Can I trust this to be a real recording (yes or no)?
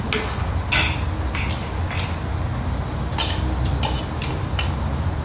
yes